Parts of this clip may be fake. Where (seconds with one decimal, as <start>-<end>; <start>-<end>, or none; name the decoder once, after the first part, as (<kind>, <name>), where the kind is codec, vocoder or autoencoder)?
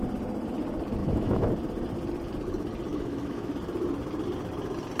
1.0-1.5 (autoencoder, DAC-VAE); 2.9-3.5